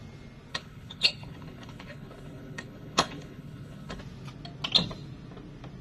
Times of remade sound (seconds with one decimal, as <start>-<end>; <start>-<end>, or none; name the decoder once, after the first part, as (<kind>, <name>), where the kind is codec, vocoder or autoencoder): 0.5-4.0 (codec, HILCodec)